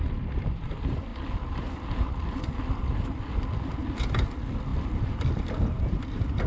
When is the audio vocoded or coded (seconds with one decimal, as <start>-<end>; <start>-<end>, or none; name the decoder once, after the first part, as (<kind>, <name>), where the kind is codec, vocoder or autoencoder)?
0.0-1.1 (vocoder, BigVGAN v2); 4.1-6.5